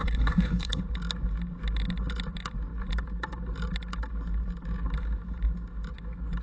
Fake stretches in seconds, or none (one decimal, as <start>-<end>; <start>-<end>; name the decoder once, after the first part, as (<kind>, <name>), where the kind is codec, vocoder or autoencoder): 0.0-0.8 (codec, HILCodec)